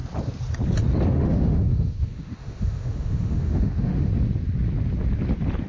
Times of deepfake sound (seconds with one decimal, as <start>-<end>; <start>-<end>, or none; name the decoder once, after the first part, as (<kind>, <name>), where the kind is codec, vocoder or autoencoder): 1.1-4.1 (autoencoder, DAC-VAE)